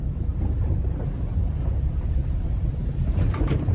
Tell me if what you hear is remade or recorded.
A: remade